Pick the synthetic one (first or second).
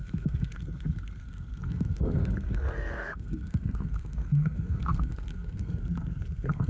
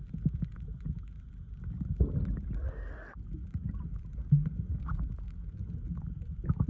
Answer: first